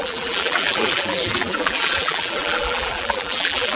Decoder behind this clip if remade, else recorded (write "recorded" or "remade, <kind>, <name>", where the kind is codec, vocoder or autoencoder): remade, vocoder, BigVGAN v2